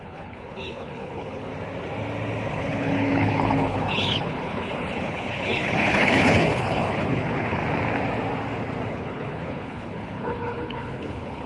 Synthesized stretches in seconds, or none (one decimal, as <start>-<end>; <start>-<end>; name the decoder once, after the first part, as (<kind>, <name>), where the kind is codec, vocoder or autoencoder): 0.0-1.5 (codec, HILCodec); 2.5-7.6; 8.9-11.5